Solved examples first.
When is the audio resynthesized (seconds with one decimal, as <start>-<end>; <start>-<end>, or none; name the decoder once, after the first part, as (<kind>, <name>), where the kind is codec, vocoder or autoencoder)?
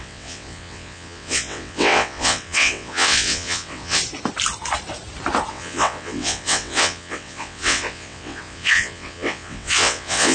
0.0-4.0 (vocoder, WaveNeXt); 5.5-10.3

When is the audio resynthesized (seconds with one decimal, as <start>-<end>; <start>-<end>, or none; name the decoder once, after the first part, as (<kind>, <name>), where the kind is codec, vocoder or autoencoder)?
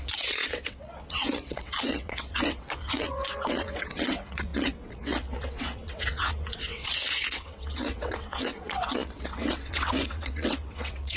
0.0-11.2 (vocoder, WaveNeXt)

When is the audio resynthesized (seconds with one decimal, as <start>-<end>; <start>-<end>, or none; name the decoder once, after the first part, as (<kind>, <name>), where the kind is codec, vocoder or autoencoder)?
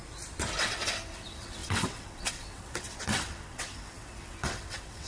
0.6-5.1 (vocoder, WaveNeXt)